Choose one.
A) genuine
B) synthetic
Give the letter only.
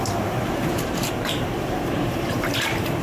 B